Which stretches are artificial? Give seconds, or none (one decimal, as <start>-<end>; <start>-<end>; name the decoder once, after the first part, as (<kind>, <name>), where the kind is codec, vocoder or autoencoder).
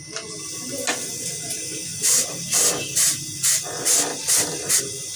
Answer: none